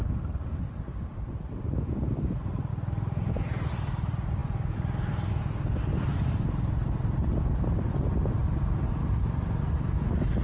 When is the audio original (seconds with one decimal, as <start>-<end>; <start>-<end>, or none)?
none